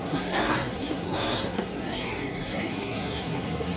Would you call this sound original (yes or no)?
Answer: no